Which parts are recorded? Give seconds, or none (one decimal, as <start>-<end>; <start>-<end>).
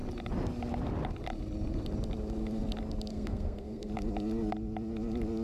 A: 0.0-3.1; 3.9-5.4